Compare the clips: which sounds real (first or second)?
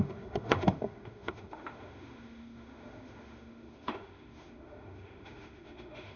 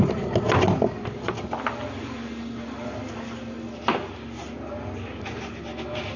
second